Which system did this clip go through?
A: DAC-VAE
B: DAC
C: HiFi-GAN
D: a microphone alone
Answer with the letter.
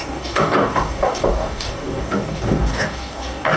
B